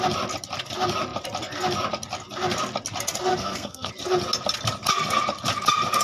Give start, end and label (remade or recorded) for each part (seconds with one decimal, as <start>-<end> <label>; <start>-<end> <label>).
0.0-3.3 recorded; 3.3-3.9 remade; 3.9-6.0 recorded